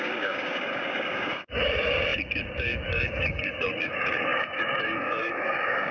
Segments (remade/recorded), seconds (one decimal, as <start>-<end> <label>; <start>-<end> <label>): 0.0-5.9 remade